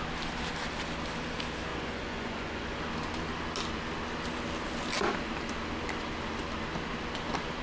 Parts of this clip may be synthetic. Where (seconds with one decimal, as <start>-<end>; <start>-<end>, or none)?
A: 1.7-2.8